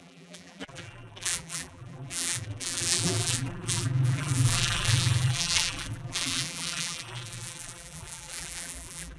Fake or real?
fake